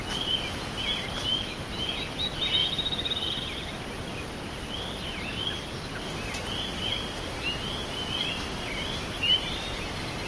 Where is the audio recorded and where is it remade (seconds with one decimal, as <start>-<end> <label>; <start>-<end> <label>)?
0.0-1.3 recorded; 1.3-2.1 remade; 2.1-10.3 recorded